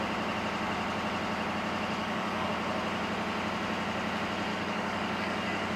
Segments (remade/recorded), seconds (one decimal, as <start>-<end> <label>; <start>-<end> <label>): 0.0-2.0 recorded; 2.0-2.5 remade; 2.5-4.5 recorded; 4.5-5.8 remade